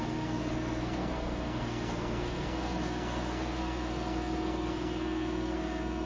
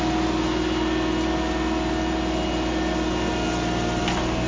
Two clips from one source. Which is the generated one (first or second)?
first